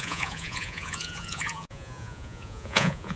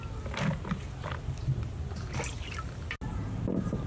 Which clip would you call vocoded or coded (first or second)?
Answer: first